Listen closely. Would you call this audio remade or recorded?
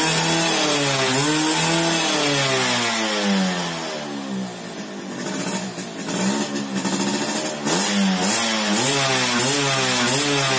recorded